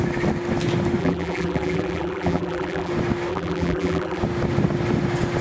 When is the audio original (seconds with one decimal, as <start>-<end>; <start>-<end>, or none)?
0.0-1.0; 2.9-3.3; 4.2-5.4